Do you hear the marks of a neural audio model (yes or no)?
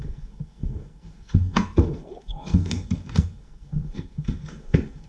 yes